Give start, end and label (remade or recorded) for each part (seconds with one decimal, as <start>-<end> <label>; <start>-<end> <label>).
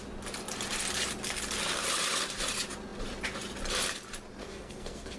0.0-4.4 recorded; 4.4-5.2 remade